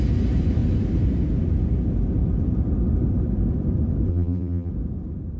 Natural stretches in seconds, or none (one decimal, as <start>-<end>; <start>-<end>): 0.0-4.1; 4.7-5.4